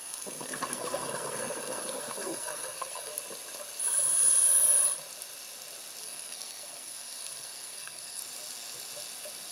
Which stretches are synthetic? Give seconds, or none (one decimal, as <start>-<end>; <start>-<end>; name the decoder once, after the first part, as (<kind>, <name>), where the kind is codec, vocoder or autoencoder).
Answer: 0.0-3.1 (codec, SNAC); 6.0-8.2